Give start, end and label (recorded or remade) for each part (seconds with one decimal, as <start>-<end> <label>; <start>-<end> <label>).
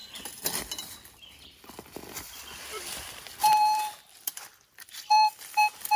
0.0-1.3 recorded; 1.3-6.0 remade